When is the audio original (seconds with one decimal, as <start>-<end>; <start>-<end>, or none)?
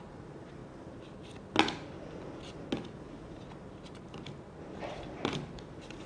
0.6-4.0